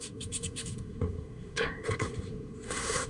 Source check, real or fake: fake